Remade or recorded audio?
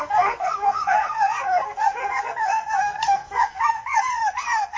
remade